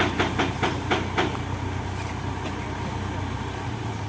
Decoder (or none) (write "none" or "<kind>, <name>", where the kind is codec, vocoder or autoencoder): none